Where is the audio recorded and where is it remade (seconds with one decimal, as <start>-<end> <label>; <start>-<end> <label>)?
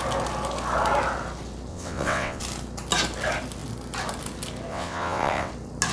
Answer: 0.0-1.7 recorded; 1.7-2.4 remade; 2.4-4.7 recorded; 4.7-5.5 remade; 5.5-5.9 recorded